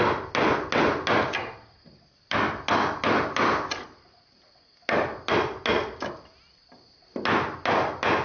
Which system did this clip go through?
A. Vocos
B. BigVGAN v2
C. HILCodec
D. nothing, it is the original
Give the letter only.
D